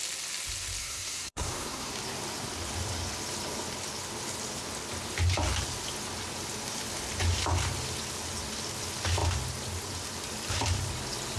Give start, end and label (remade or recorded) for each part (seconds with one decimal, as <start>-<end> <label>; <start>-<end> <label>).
0.0-0.8 recorded; 0.8-1.9 remade; 1.9-11.4 recorded